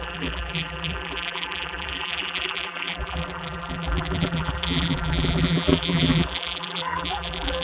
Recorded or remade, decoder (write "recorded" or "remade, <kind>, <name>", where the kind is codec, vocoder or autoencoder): remade, vocoder, BigVGAN v2